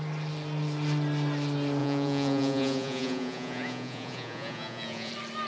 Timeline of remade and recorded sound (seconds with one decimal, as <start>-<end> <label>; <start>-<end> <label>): 0.0-1.8 recorded; 1.8-5.1 remade; 5.1-5.5 recorded